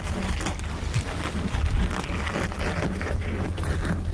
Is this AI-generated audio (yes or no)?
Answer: no